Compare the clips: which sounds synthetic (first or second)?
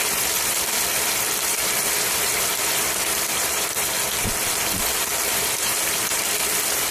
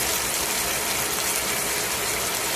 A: first